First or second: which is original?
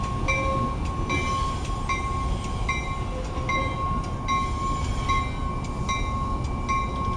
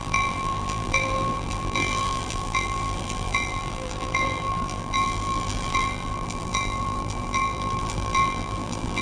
first